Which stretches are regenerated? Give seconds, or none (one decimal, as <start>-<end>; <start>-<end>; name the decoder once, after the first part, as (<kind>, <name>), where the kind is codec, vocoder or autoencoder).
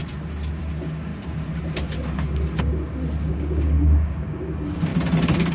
0.6-1.1 (codec, DAC); 3.3-4.9